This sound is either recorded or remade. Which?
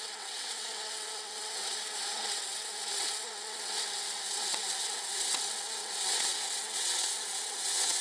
remade